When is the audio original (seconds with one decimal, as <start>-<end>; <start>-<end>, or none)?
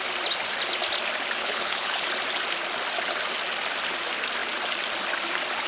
0.0-1.4; 2.1-5.7